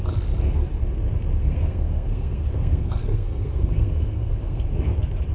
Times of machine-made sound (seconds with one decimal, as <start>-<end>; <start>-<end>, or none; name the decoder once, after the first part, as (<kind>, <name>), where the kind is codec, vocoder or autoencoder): 1.4-4.6 (codec, SNAC)